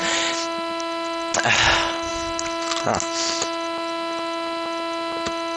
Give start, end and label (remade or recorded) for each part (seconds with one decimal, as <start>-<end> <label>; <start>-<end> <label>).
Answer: 0.0-5.6 recorded